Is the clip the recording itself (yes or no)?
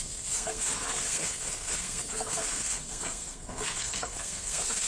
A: no